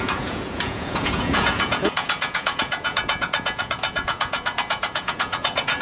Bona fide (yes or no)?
no